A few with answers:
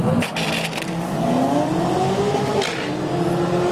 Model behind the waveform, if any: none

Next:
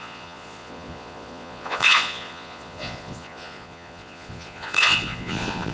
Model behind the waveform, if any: vocoder, Vocos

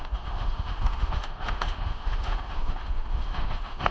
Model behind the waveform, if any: autoencoder, DAC-VAE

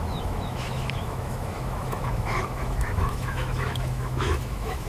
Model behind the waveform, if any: autoencoder, DAC-VAE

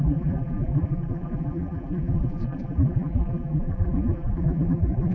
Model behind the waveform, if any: vocoder, BigVGAN v2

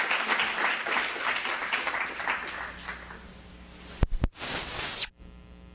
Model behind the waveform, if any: none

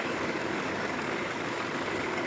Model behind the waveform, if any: codec, DAC